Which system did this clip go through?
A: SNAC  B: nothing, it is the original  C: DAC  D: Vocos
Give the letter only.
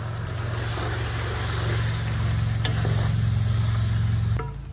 B